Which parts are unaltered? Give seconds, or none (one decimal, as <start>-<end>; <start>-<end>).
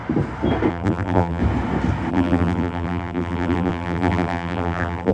0.0-0.7; 1.4-2.1